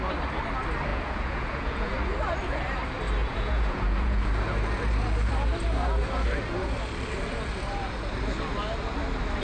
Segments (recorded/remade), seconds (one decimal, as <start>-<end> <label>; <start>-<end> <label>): 0.0-0.9 recorded; 0.9-2.0 remade; 2.0-3.2 recorded; 3.2-4.2 remade; 4.2-9.4 recorded